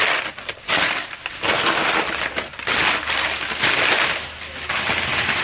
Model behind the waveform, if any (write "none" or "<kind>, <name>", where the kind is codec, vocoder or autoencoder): none